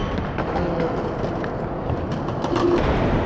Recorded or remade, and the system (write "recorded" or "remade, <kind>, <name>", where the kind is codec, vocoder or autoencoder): recorded